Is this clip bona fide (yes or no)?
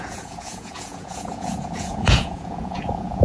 no